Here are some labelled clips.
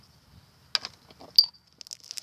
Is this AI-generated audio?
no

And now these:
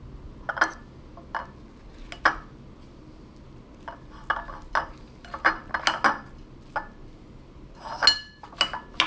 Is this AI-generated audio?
no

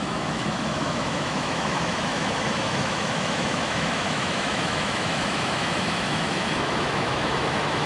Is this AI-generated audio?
yes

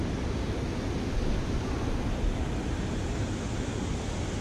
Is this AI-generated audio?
no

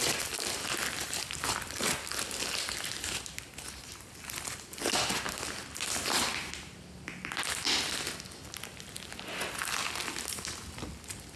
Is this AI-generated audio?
no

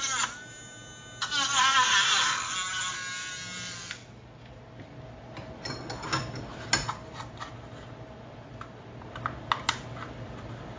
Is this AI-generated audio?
no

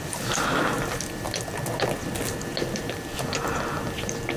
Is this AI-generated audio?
no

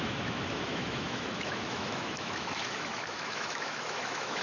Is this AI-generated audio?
yes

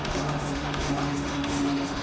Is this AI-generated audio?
yes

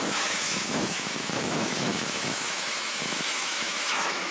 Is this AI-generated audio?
yes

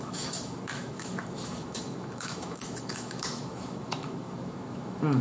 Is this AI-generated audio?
yes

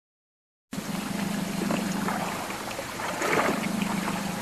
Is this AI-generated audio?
no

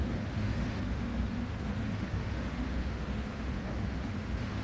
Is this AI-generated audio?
yes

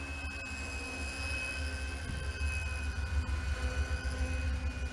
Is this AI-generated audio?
no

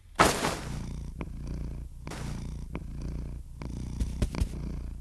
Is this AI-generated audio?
no